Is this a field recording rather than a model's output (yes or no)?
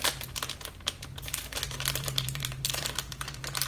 no